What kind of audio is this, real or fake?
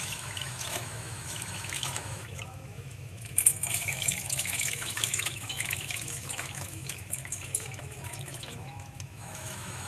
fake